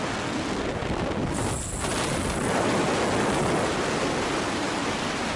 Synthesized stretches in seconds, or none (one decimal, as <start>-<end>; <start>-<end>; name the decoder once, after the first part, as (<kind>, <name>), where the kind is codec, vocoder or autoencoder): none